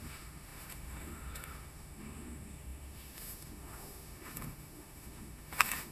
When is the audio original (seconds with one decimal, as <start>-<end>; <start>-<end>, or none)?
none

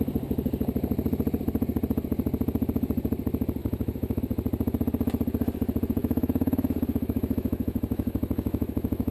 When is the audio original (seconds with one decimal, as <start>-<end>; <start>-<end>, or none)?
0.0-3.6; 4.2-6.0

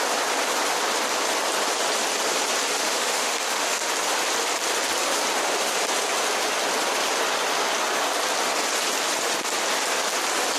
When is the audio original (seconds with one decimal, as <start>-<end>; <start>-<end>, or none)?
0.0-2.8; 3.9-10.6

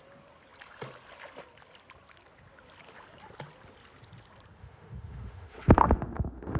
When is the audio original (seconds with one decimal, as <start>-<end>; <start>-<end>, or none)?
0.0-4.6

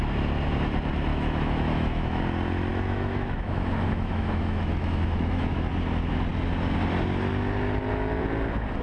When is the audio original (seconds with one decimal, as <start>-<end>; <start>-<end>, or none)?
0.0-1.1; 2.2-2.7; 5.7-8.8

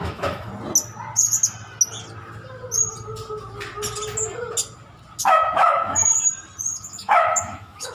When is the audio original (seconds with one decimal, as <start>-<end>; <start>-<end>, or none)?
0.5-5.2; 6.1-6.8